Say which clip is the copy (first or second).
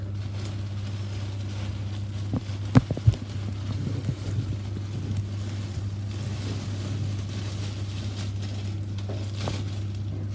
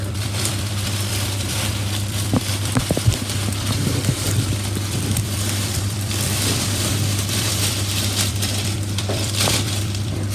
second